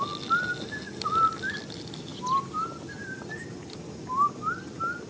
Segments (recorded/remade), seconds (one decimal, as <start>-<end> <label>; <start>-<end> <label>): 0.0-5.1 recorded